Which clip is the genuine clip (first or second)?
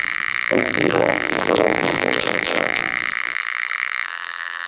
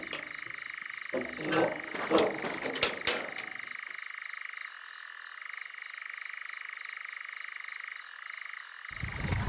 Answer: second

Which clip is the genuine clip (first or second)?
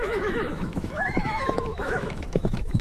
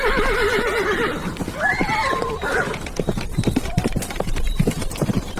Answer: second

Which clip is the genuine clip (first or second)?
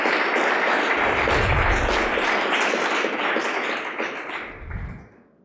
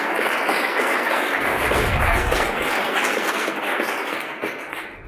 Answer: first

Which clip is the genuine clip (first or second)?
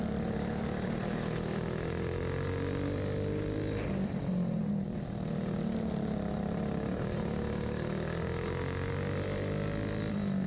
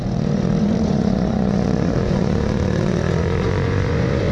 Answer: first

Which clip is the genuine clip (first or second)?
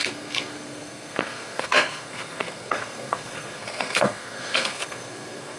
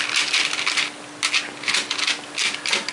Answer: second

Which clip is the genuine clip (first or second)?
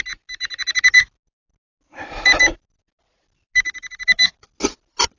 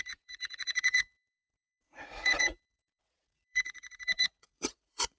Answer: first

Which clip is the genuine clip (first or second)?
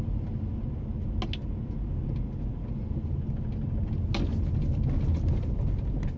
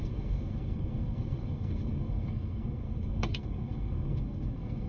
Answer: first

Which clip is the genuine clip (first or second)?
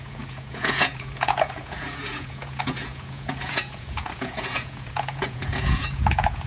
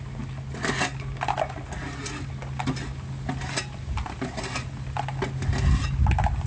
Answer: second